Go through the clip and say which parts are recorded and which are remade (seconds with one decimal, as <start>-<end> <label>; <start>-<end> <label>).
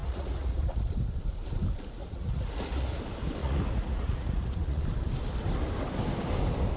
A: 0.0-0.6 remade; 0.6-2.0 recorded; 2.0-3.0 remade; 3.0-3.4 recorded; 3.4-4.8 remade; 4.8-6.8 recorded